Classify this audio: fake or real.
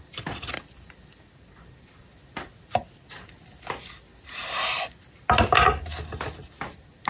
real